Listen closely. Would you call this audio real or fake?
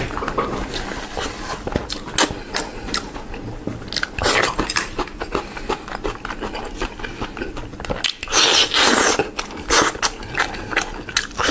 real